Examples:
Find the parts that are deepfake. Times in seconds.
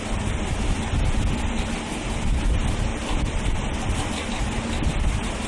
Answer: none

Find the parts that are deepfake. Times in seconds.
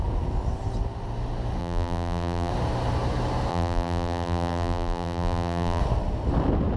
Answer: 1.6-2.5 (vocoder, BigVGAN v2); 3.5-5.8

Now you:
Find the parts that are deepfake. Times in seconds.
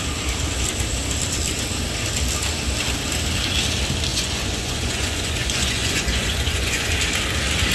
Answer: 4.1-6.9 (vocoder, Vocos)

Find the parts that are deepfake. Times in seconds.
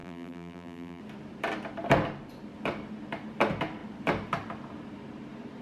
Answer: 0.0-1.0 (vocoder, BigVGAN v2)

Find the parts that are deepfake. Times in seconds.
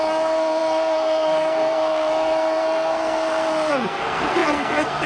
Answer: 0.0-5.1 (codec, SNAC)